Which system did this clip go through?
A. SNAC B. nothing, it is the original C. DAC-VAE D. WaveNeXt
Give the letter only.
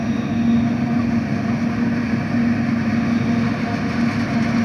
B